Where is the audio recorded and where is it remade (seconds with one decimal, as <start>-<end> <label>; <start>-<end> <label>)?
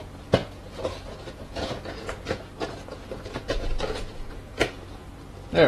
0.0-5.0 remade; 5.0-5.7 recorded